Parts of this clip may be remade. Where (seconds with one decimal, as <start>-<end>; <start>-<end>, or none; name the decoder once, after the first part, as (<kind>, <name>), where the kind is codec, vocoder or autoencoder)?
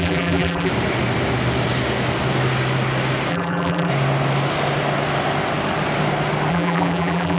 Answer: 0.0-0.7 (vocoder, BigVGAN v2); 3.3-3.9; 6.5-7.4